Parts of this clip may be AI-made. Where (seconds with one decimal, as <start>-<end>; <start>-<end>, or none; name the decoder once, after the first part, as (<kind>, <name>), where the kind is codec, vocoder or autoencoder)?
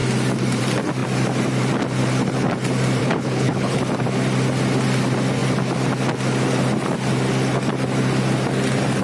3.0-3.8 (codec, HILCodec)